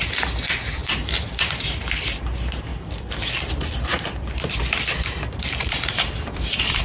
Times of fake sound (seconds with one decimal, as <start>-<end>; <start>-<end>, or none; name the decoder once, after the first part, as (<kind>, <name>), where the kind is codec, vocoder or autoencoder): 0.0-2.7 (vocoder, BigVGAN v2); 3.5-6.8